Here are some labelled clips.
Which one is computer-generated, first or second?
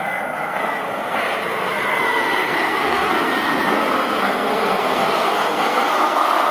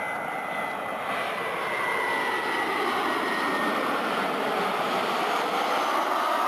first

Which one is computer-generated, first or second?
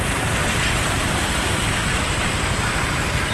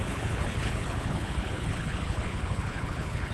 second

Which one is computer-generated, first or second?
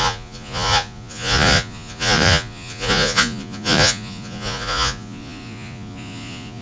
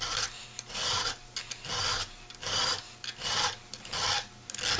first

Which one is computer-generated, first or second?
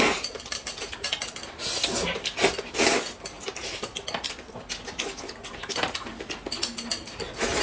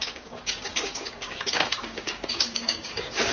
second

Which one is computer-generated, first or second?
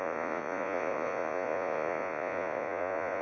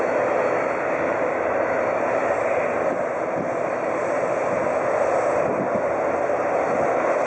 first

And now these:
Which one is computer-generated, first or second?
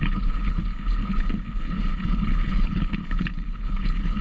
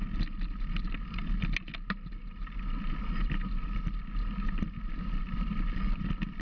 first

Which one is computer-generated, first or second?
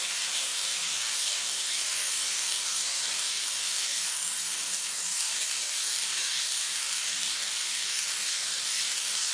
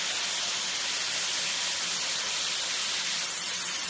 first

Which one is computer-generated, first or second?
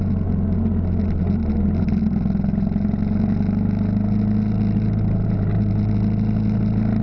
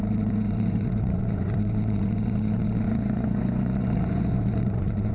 second